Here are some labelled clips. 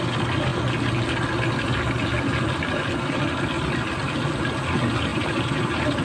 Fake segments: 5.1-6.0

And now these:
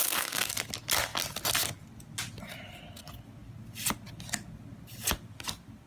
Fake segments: 0.0-0.5